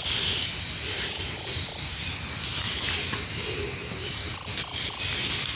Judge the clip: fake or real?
real